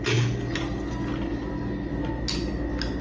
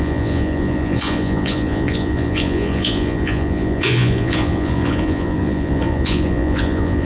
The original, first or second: first